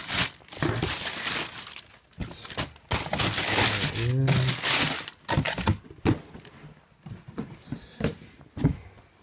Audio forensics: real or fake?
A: real